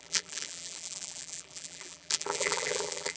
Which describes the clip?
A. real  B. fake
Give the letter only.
B